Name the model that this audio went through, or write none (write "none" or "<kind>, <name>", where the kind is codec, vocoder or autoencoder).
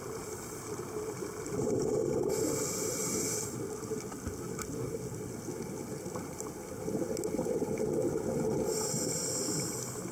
none